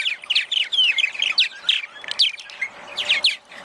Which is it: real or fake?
real